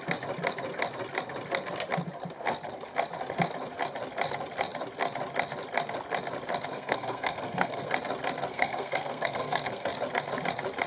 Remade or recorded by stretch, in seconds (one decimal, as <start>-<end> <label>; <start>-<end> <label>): 0.0-6.7 recorded; 6.7-7.9 remade; 7.9-8.5 recorded; 8.5-9.9 remade; 9.9-10.9 recorded